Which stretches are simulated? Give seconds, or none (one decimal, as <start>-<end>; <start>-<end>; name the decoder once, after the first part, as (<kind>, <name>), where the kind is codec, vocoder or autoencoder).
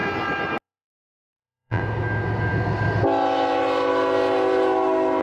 0.6-1.8 (vocoder, BigVGAN v2)